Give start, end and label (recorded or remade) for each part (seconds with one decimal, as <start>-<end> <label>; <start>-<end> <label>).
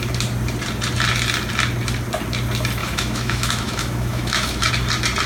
0.0-2.8 recorded; 2.8-4.7 remade; 4.7-5.3 recorded